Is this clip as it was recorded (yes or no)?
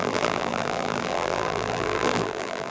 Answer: no